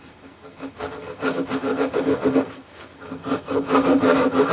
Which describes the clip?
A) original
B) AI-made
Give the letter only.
B